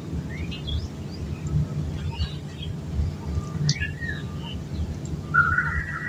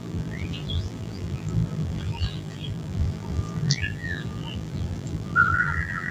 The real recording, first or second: first